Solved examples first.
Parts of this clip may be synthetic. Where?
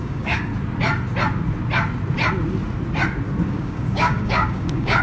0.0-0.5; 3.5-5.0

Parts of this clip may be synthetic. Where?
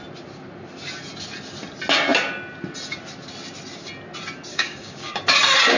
4.5-5.2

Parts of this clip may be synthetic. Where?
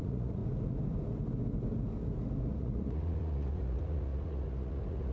0.0-0.4; 2.5-5.1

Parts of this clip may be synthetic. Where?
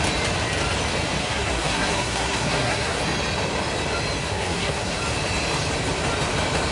1.2-3.0; 4.2-5.0